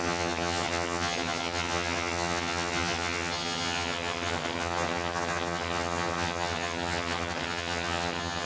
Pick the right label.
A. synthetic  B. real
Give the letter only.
A